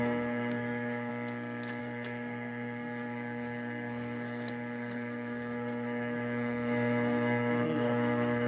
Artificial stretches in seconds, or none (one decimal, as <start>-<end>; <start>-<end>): 0.0-1.1; 1.8-8.5